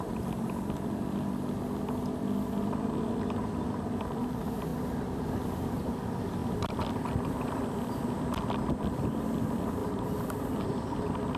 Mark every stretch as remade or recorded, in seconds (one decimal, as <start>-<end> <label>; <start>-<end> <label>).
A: 0.0-9.8 recorded; 9.8-11.0 remade; 11.0-11.4 recorded